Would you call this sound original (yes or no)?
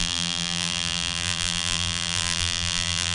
no